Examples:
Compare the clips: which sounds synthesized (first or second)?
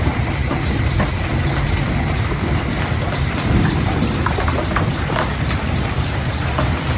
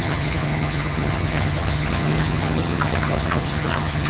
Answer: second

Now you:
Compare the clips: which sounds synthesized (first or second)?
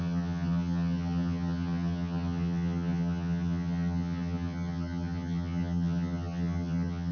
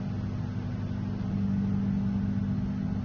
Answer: first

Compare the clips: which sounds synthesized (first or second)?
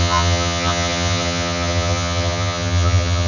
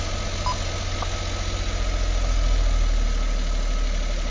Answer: first